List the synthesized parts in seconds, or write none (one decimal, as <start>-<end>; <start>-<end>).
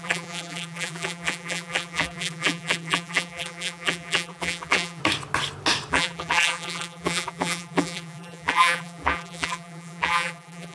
0.0-5.0; 5.9-10.7